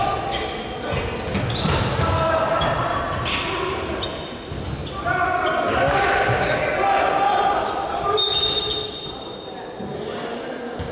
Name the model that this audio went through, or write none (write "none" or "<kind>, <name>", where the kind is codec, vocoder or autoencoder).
none